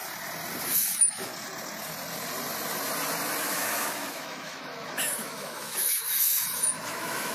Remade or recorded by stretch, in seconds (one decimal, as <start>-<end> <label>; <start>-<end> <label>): 0.0-0.6 recorded; 0.6-1.3 remade; 1.3-3.4 recorded; 3.4-7.3 remade